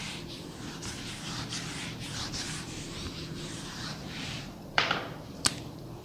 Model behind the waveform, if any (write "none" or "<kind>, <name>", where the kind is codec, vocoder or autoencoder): vocoder, BigVGAN v2